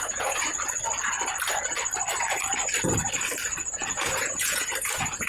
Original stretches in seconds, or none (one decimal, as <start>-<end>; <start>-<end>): 0.5-3.7